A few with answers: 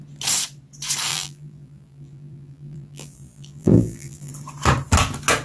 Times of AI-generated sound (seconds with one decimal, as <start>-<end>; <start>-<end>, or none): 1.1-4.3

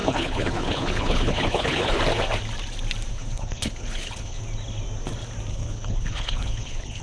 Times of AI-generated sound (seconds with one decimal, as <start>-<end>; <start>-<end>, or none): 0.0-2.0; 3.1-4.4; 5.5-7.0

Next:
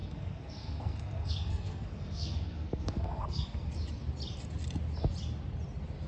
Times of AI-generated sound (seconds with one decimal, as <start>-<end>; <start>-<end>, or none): 0.0-3.7

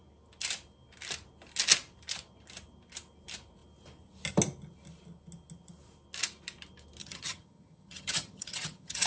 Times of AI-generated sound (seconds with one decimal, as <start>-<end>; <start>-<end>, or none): 7.0-9.1

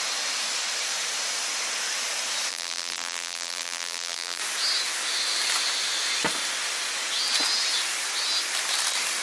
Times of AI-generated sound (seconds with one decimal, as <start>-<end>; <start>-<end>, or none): 2.5-4.4